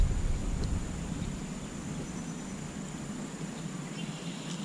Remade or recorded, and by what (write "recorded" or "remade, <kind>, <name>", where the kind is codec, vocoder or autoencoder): recorded